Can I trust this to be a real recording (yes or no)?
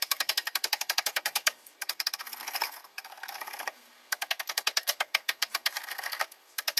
no